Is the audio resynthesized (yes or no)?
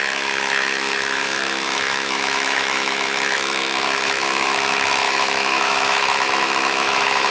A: yes